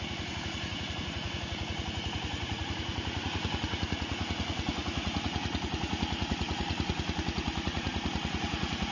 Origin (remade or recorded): remade